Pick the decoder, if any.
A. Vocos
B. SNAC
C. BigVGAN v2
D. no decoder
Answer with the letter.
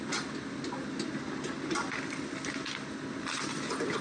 D